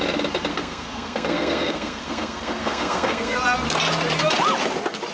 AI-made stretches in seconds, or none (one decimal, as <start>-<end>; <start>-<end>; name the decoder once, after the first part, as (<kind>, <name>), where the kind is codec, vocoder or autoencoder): 0.5-3.4 (codec, SNAC)